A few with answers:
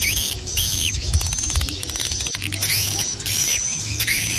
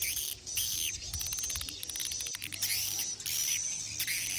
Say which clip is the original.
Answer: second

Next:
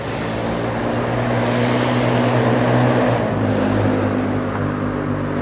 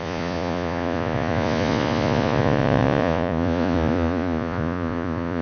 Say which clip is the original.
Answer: first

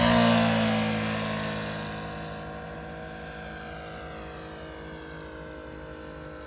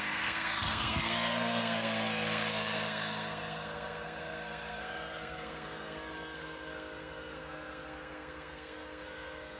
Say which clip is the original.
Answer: first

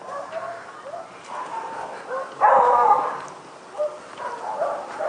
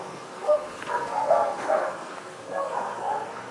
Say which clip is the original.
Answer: first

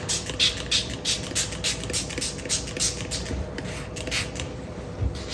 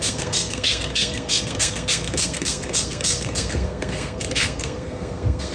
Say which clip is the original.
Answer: first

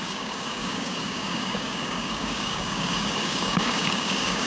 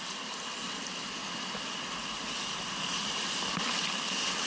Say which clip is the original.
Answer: second